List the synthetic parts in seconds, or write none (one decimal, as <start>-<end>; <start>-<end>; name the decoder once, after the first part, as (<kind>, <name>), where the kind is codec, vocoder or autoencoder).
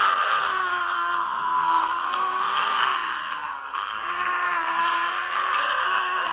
0.0-6.3 (codec, SNAC)